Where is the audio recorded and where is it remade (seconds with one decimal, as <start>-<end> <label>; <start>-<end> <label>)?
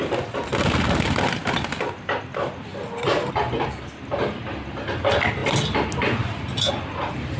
0.0-7.4 recorded